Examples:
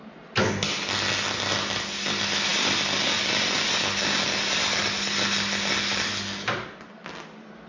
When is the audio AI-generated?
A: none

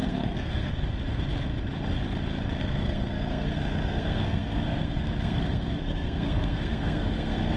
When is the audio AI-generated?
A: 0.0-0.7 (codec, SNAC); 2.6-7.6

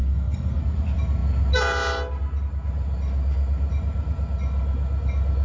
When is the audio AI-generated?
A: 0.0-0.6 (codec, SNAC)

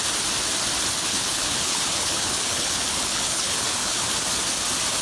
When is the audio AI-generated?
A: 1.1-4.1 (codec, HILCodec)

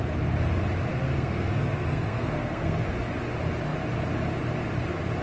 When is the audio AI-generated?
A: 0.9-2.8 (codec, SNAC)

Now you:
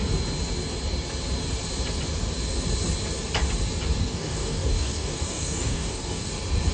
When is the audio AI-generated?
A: 4.0-6.3 (codec, DAC)

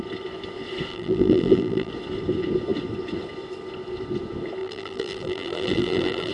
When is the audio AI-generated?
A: 0.9-1.9 (vocoder, BigVGAN v2); 4.6-6.3